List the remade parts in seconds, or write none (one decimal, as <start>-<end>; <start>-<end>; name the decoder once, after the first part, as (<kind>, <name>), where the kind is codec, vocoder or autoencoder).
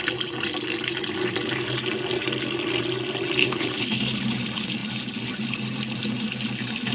3.4-4.0 (codec, HILCodec)